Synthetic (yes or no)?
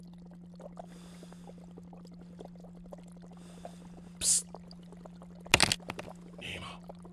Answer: no